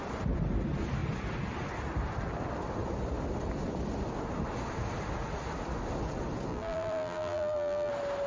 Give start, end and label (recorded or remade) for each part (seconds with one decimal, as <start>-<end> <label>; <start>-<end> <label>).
0.0-6.5 recorded; 6.5-7.9 remade; 7.9-8.3 recorded